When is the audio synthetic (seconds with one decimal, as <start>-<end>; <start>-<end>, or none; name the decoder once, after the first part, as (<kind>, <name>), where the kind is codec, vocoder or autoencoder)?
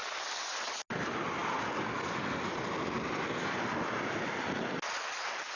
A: none